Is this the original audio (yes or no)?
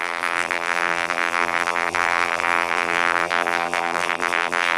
no